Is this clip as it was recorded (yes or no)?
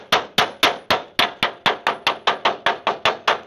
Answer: yes